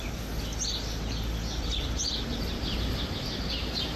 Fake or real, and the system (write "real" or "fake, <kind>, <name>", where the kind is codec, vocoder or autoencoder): real